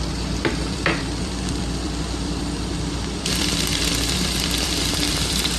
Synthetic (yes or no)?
yes